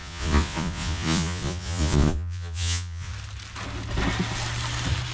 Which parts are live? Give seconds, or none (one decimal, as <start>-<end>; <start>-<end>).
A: 3.1-5.1